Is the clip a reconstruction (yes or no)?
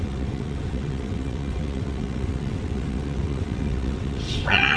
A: yes